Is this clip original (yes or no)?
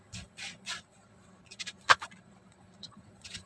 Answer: no